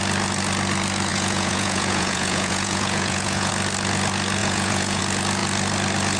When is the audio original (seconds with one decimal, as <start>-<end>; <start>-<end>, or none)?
0.0-1.1; 3.5-4.4; 5.0-6.2